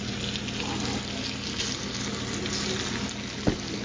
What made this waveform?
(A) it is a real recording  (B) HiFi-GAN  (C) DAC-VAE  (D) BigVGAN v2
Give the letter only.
A